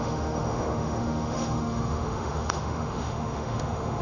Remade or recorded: remade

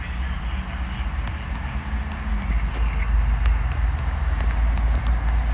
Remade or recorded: recorded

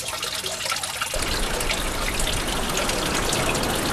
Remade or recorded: recorded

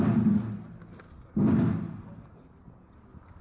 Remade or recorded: recorded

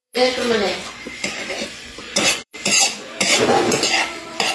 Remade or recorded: remade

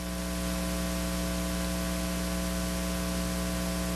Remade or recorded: recorded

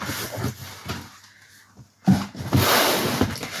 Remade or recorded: recorded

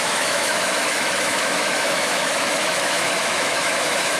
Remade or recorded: remade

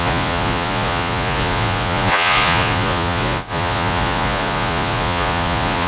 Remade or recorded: remade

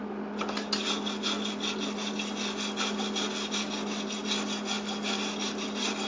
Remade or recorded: recorded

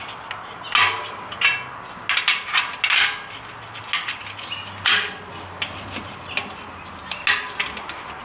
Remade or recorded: recorded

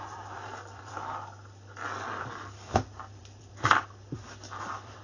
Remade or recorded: remade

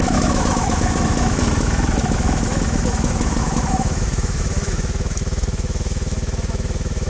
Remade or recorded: remade